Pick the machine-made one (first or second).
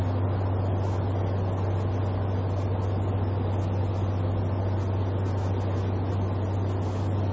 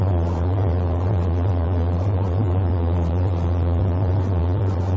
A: second